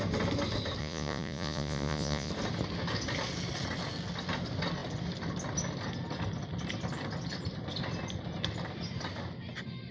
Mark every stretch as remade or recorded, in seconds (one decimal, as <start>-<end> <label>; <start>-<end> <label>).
0.0-0.8 recorded; 0.8-2.3 remade; 2.3-9.9 recorded